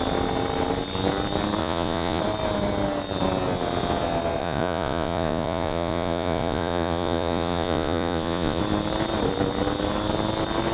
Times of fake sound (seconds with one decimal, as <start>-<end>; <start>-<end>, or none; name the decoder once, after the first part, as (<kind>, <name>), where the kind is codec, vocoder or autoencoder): 1.6-2.2 (vocoder, Vocos); 4.4-8.6